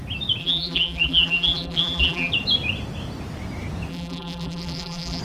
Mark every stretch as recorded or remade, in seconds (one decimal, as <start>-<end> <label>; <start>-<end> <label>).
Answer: 0.0-0.4 recorded; 0.4-2.3 remade; 2.3-3.9 recorded; 3.9-5.2 remade